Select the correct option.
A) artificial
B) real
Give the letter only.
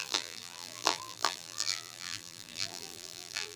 A